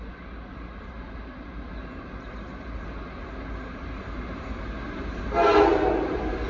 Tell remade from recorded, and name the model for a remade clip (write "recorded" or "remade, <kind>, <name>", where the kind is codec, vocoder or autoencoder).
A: recorded